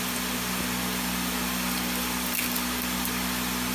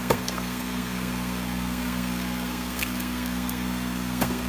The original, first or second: first